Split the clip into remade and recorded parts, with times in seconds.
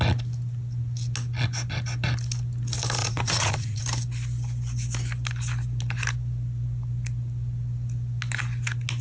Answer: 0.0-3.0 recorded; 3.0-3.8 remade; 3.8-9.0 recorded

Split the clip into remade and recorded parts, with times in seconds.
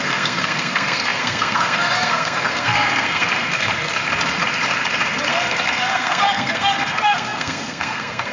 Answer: 0.0-3.7 remade; 3.7-5.3 recorded; 5.3-8.3 remade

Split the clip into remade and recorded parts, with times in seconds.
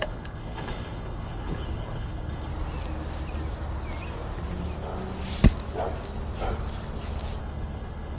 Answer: 0.0-2.5 remade; 2.5-7.4 recorded; 7.4-8.2 remade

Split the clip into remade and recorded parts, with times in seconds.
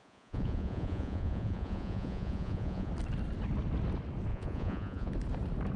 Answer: 0.0-2.9 remade; 2.9-4.3 recorded; 4.3-5.1 remade; 5.1-5.8 recorded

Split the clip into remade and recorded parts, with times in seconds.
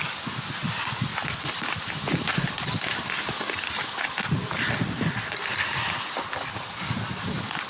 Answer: 0.0-7.7 recorded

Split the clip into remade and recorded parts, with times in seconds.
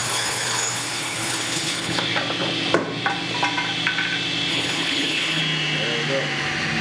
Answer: 0.0-2.0 remade; 2.0-4.5 recorded; 4.5-5.4 remade; 5.4-6.8 recorded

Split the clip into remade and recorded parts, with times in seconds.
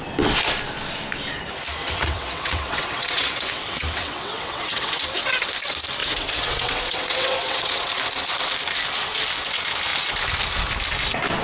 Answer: 0.0-1.8 recorded; 1.8-5.0 remade; 5.0-6.0 recorded; 6.0-7.9 remade; 7.9-11.4 recorded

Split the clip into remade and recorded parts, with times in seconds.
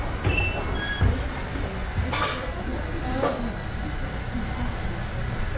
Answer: 0.0-5.6 recorded